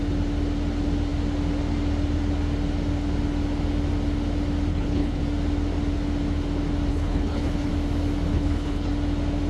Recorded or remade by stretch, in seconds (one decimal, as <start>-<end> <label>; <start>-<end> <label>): 0.0-4.7 recorded; 4.7-5.2 remade; 5.2-6.9 recorded; 6.9-7.7 remade; 7.7-8.3 recorded; 8.3-8.9 remade; 8.9-9.5 recorded